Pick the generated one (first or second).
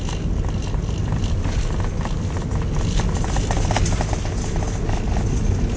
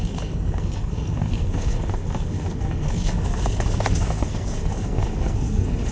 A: second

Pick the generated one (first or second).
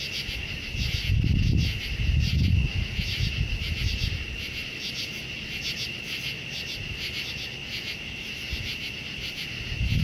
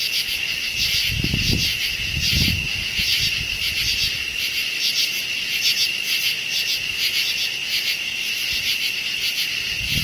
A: second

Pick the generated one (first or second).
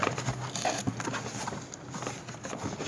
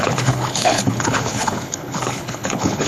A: second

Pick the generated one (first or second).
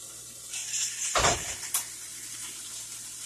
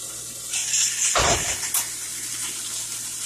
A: first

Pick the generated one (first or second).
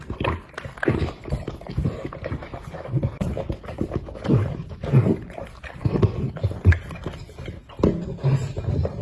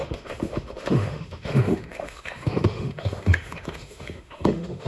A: second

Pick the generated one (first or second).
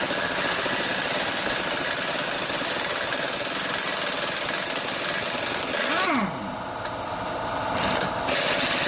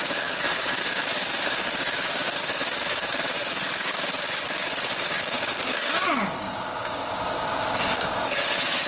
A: second